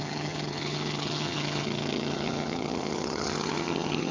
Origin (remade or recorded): remade